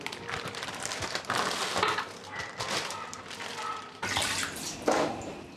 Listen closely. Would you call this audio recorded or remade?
remade